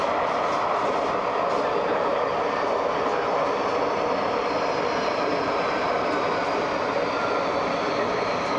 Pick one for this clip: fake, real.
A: real